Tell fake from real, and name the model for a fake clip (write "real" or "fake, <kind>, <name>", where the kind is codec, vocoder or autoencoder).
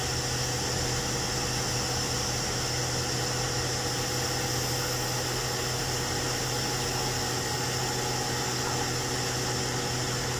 real